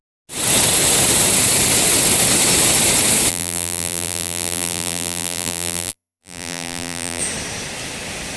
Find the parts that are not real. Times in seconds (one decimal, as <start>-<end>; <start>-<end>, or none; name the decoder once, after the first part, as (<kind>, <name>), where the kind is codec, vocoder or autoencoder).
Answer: 3.3-7.2 (vocoder, BigVGAN v2)